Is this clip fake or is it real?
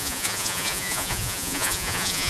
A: fake